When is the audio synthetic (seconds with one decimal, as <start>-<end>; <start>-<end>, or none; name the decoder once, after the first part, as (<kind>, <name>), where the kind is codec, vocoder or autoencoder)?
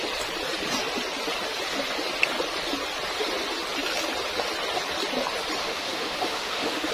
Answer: 5.6-6.9 (autoencoder, DAC-VAE)